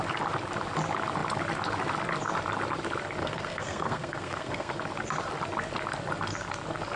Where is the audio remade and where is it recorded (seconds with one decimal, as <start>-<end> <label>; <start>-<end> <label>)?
0.0-3.2 recorded; 3.2-4.7 remade; 4.7-7.0 recorded